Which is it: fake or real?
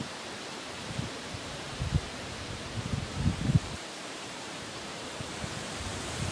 fake